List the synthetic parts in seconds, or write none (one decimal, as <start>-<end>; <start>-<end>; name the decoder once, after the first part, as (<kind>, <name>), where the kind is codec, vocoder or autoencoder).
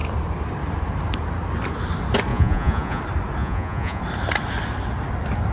2.3-3.0 (vocoder, Vocos); 3.4-4.0